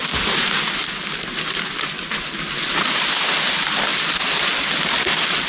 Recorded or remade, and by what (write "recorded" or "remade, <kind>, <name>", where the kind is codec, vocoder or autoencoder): recorded